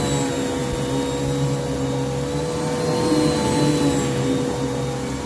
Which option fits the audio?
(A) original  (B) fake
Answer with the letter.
A